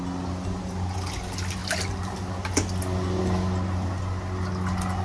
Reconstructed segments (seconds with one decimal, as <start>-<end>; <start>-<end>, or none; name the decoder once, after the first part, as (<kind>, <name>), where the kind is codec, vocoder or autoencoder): none